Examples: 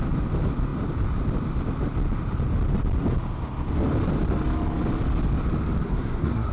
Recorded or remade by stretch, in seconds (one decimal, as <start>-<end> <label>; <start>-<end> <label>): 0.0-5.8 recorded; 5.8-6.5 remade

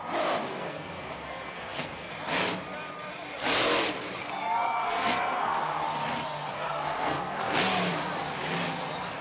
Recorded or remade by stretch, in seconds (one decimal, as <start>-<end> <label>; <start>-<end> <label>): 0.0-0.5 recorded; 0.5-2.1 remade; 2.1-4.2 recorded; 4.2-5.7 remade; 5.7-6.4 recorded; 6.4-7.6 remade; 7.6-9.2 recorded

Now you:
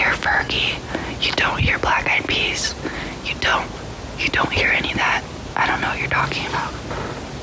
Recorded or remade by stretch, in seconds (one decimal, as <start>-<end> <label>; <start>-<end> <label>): 0.0-7.4 recorded

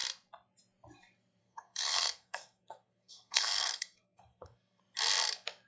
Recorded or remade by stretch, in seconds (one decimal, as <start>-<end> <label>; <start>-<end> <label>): 0.0-1.4 recorded; 1.4-4.8 remade; 4.8-5.7 recorded

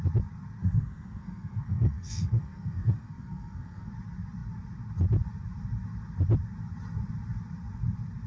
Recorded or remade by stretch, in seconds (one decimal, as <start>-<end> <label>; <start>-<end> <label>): 0.0-0.6 recorded; 0.6-3.9 remade; 3.9-8.3 recorded

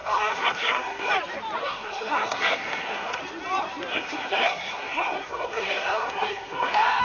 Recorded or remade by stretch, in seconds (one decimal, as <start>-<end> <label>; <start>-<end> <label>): 0.0-1.1 remade; 1.1-1.6 recorded; 1.6-3.2 remade; 3.2-3.9 recorded; 3.9-7.0 remade